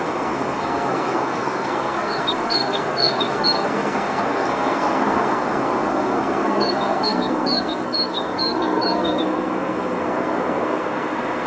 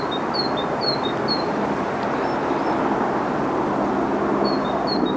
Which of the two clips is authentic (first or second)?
second